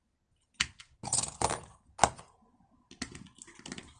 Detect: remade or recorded recorded